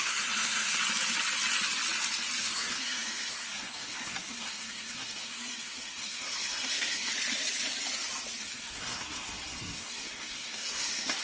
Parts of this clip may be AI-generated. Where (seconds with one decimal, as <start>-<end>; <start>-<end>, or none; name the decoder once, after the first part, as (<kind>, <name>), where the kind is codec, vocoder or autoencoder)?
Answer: 0.0-0.8 (codec, SNAC); 2.4-7.1; 8.4-11.2